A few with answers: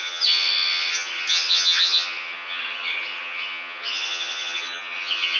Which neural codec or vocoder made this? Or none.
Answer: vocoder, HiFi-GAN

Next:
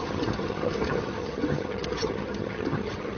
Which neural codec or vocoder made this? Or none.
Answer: vocoder, HiFi-GAN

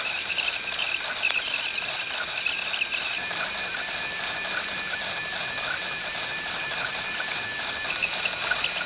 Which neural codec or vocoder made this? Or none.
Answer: none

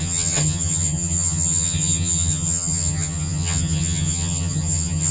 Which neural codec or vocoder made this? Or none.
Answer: vocoder, HiFi-GAN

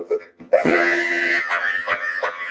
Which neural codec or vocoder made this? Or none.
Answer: vocoder, HiFi-GAN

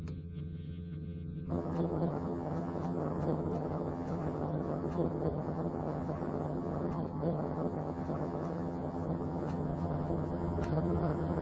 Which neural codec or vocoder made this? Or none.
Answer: vocoder, HiFi-GAN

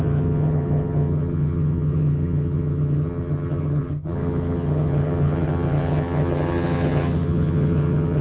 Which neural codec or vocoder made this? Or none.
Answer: vocoder, HiFi-GAN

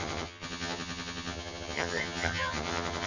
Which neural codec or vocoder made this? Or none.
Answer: vocoder, HiFi-GAN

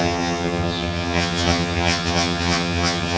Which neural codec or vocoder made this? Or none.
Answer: vocoder, HiFi-GAN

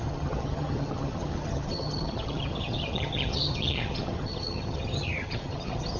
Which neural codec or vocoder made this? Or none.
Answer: vocoder, HiFi-GAN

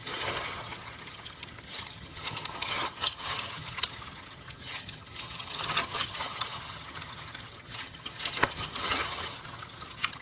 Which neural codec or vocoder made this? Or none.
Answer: vocoder, HiFi-GAN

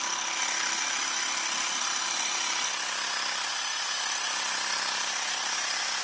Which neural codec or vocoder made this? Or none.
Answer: none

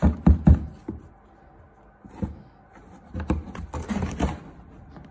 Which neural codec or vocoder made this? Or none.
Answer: none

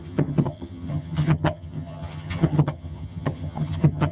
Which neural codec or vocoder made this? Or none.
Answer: vocoder, HiFi-GAN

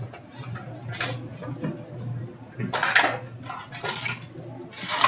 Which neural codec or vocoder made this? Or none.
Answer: none